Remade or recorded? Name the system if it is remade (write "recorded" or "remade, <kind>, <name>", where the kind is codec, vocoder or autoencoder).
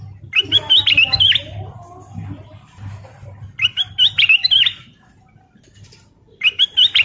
recorded